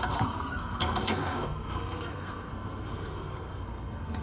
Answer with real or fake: fake